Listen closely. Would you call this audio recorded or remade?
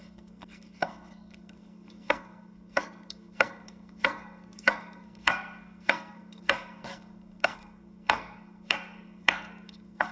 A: remade